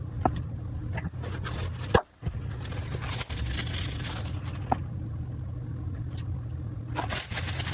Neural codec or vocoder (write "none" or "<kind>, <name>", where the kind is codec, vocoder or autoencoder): none